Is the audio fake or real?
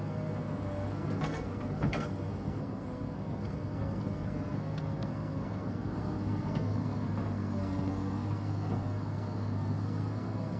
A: fake